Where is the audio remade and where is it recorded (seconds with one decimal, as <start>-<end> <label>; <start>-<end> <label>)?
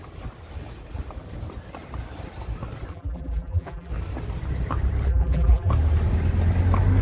0.0-2.9 recorded; 2.9-3.9 remade; 3.9-5.1 recorded; 5.1-5.7 remade; 5.7-7.0 recorded